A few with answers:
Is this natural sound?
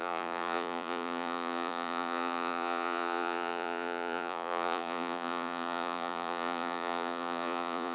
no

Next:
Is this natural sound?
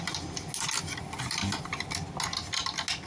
yes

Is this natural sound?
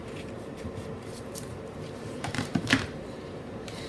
no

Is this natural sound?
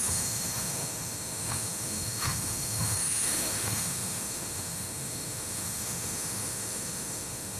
no